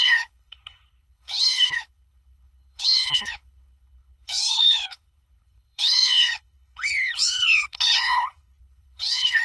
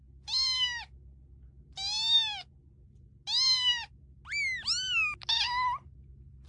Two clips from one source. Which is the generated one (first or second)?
first